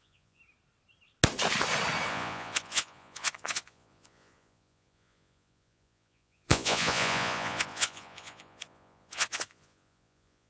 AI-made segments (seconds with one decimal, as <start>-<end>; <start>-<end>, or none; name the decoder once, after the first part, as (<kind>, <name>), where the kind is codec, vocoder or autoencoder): 0.0-0.4 (vocoder, Vocos); 2.1-10.5